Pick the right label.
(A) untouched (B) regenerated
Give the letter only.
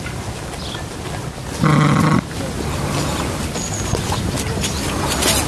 A